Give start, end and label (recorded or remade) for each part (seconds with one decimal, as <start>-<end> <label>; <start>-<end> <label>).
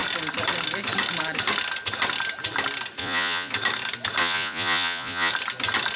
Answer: 0.0-3.0 recorded; 3.0-3.5 remade; 3.5-4.2 recorded; 4.2-5.3 remade; 5.3-6.0 recorded